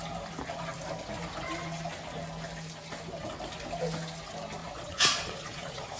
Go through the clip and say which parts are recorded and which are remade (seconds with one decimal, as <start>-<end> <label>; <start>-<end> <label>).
0.0-4.6 recorded; 4.6-6.0 remade